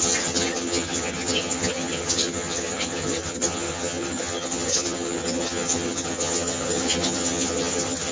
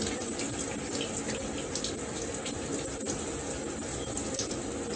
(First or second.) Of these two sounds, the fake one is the first